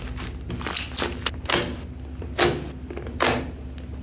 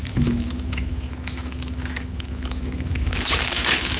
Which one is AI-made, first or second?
second